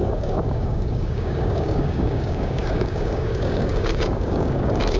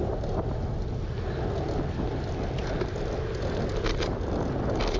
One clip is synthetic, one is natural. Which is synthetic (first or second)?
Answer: first